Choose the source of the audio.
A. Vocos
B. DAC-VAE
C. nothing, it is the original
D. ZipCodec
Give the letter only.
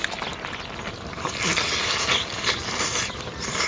C